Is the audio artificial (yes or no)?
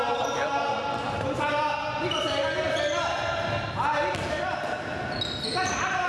no